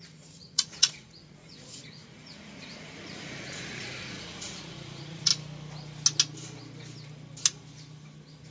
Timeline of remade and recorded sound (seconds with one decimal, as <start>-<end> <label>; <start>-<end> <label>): 0.0-5.3 remade; 5.3-8.5 recorded